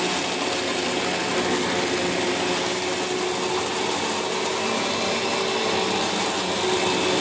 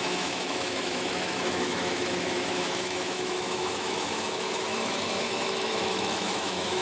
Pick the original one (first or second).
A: first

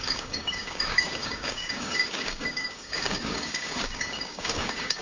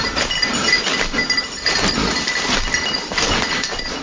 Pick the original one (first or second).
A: second